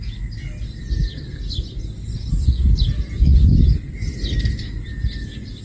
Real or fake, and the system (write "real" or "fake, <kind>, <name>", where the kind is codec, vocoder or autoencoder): real